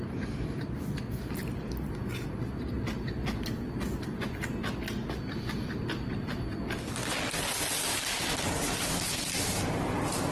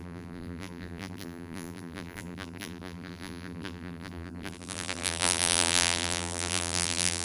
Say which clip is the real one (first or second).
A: first